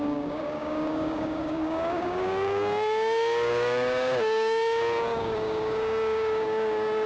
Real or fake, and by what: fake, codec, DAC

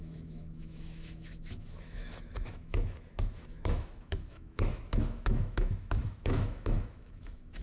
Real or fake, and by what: fake, autoencoder, DAC-VAE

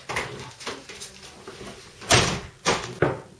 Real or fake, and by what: real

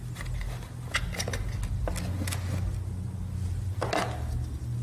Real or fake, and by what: real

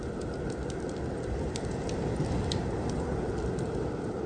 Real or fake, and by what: real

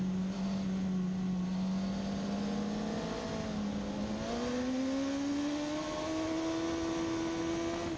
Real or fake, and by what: real